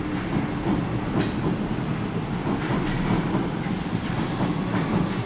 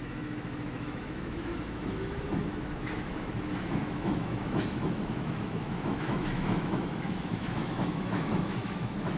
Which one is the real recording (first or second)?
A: first